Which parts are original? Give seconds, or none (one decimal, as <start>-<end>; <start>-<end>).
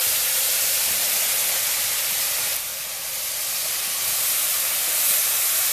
1.4-2.1; 2.7-5.2